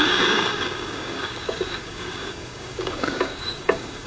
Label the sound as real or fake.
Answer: fake